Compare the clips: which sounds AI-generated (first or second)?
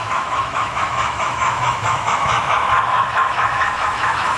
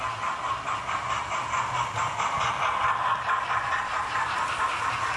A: first